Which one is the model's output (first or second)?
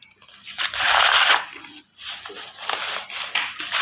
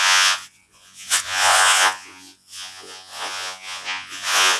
second